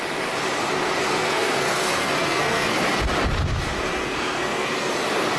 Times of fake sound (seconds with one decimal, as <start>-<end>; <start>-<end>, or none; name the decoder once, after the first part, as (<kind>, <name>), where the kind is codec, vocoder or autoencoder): 1.2-2.8 (codec, SNAC); 4.0-4.9